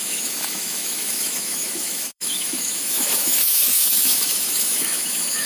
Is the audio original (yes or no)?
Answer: no